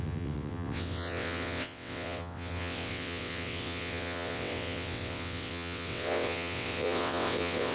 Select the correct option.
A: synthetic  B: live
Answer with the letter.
A